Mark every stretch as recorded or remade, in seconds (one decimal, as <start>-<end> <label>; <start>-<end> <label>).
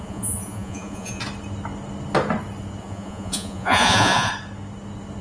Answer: 0.0-1.2 remade; 1.2-2.8 recorded; 2.8-4.3 remade; 4.3-5.2 recorded